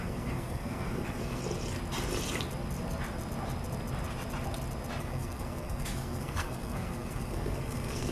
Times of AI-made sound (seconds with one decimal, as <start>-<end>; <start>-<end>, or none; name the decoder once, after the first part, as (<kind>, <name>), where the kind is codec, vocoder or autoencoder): 0.0-1.4 (codec, SNAC); 5.0-8.1